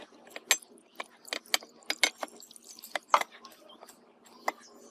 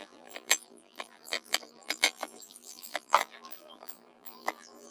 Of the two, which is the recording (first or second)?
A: first